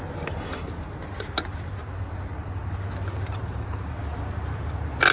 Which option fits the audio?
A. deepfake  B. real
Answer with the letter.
B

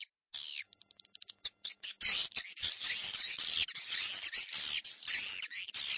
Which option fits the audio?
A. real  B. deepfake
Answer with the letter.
A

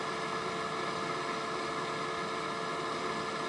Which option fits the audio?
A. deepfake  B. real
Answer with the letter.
B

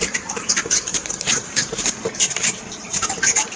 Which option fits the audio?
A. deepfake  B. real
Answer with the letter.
A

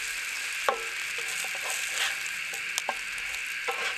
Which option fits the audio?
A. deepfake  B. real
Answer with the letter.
B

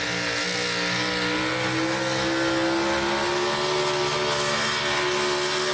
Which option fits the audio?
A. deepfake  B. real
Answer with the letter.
B